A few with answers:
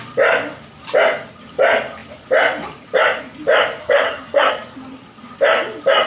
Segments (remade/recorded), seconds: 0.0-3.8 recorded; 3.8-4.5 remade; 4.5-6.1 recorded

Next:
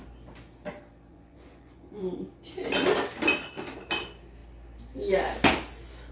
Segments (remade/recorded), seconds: 0.0-1.1 recorded; 1.1-2.0 remade; 2.0-6.1 recorded

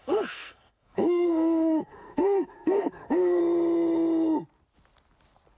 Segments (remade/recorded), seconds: 0.0-3.4 remade; 3.4-5.6 recorded

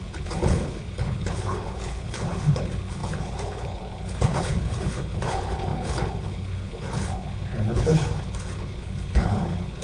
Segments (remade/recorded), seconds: 0.0-9.8 remade

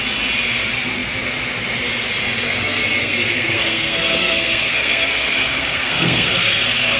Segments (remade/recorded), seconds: 0.0-3.0 recorded; 3.0-7.0 remade

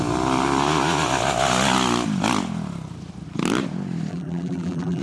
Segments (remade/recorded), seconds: 0.0-4.1 recorded; 4.1-5.0 remade